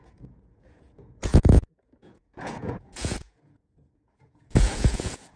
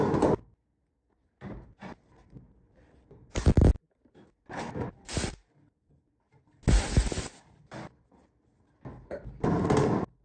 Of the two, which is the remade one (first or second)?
first